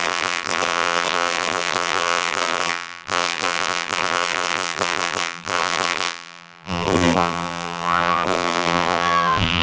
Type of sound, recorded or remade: remade